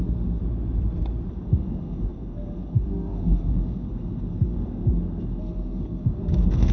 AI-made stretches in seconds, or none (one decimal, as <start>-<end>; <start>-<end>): 0.0-0.4; 1.3-6.7